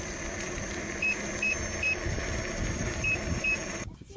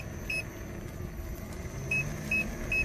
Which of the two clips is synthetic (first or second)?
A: first